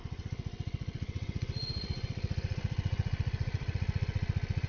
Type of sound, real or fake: fake